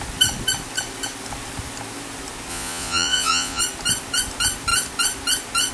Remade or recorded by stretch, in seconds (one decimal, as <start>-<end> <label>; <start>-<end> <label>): 0.0-2.5 recorded; 2.5-3.6 remade; 3.6-5.7 recorded